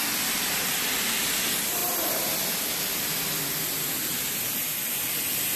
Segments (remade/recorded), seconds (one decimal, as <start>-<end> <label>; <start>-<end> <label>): 0.0-5.6 recorded